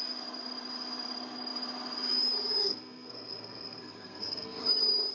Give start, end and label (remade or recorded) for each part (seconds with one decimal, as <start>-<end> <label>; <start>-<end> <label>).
0.0-2.6 recorded; 2.6-4.6 remade; 4.6-5.1 recorded